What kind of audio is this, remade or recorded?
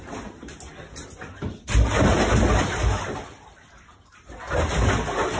recorded